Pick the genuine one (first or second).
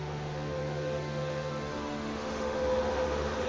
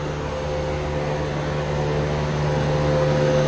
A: second